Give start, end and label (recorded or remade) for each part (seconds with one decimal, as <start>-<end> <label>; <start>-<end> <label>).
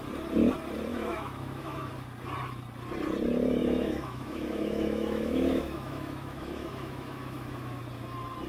0.0-0.9 recorded; 0.9-1.9 remade; 1.9-3.6 recorded; 3.6-7.8 remade; 7.8-8.5 recorded